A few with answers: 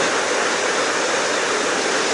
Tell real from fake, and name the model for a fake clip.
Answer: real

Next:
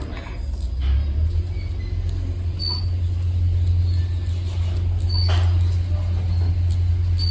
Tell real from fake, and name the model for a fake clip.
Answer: real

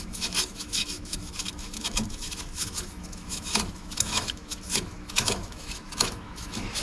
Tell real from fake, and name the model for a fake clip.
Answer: fake, autoencoder, DAC-VAE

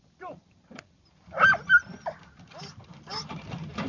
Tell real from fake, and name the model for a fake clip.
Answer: real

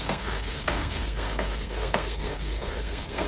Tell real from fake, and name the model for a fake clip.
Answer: fake, codec, SNAC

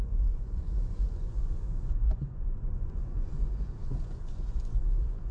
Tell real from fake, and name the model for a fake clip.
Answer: fake, vocoder, Vocos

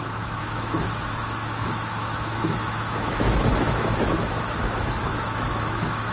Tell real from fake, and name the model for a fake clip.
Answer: fake, autoencoder, DAC-VAE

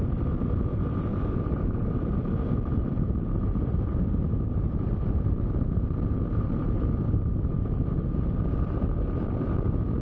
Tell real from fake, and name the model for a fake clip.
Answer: fake, vocoder, BigVGAN v2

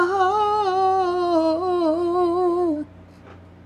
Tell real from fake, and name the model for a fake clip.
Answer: real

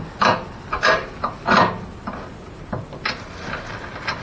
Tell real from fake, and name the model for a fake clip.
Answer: real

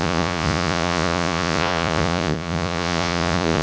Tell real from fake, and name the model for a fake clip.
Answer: fake, vocoder, Vocos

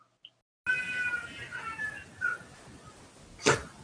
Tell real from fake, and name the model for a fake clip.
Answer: real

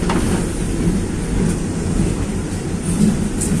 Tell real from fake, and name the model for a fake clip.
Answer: real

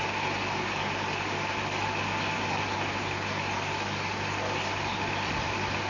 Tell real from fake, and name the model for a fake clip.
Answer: real